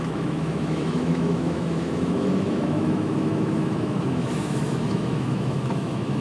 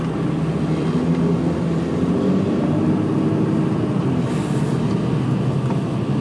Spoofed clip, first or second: first